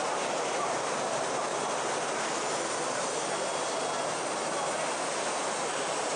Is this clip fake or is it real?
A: real